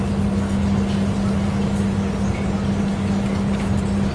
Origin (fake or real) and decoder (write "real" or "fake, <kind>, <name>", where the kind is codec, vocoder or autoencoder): real